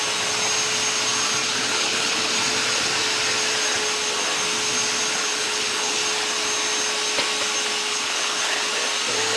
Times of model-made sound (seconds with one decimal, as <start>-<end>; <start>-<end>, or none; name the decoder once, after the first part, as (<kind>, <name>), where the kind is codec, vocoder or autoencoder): 1.4-2.3 (codec, HILCodec); 5.1-6.0; 7.9-8.7